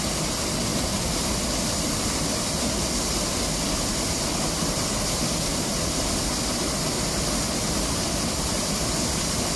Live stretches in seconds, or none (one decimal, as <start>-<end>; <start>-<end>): 0.0-9.6